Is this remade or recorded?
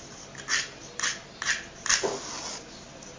recorded